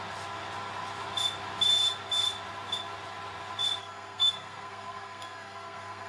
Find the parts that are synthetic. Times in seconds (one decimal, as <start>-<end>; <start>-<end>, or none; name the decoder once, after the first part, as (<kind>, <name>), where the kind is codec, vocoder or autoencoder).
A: 3.8-6.1 (codec, SNAC)